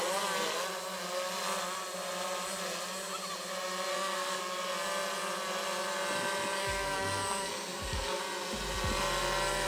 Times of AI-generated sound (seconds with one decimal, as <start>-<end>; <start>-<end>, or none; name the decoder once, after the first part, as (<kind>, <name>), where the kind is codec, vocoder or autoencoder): 3.9-4.4 (codec, SNAC); 6.6-8.2